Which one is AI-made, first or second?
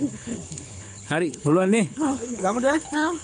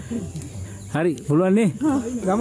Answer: first